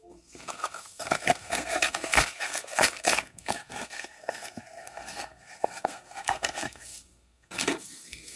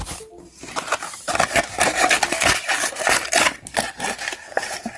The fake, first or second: first